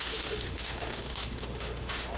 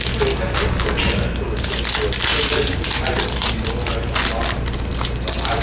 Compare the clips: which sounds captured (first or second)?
second